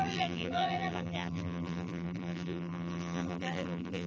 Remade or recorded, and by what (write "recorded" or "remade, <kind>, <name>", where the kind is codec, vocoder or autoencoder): remade, vocoder, BigVGAN v2